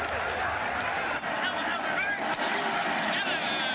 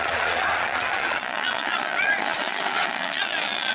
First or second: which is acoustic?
first